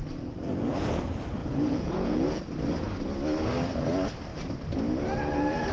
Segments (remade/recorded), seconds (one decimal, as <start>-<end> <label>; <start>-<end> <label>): 0.0-1.4 recorded; 1.4-2.4 remade; 2.4-5.7 recorded